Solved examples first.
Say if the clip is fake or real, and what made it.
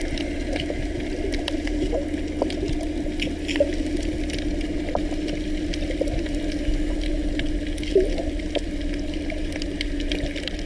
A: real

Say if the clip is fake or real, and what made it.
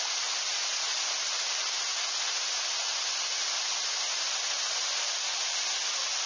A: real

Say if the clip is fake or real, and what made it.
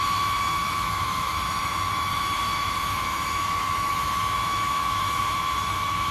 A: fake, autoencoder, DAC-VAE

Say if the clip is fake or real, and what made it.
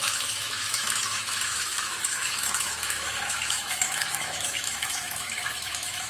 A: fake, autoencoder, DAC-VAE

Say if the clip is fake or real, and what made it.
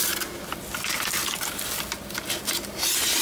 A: real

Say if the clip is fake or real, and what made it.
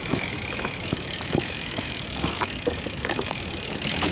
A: fake, autoencoder, DAC-VAE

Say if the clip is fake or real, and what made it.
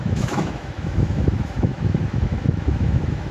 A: fake, autoencoder, DAC-VAE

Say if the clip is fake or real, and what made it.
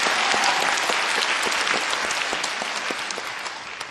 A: real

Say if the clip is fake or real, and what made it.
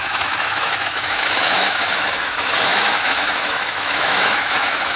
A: fake, autoencoder, DAC-VAE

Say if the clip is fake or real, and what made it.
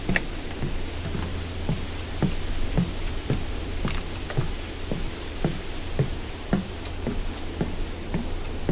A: real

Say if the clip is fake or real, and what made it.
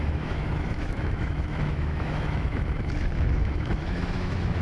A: fake, autoencoder, DAC-VAE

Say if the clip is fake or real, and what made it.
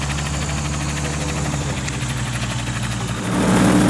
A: real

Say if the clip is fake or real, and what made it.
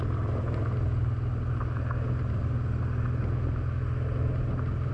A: real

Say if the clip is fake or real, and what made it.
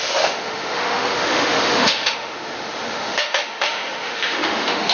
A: fake, autoencoder, DAC-VAE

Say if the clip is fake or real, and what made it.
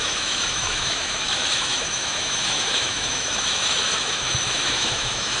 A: fake, autoencoder, DAC-VAE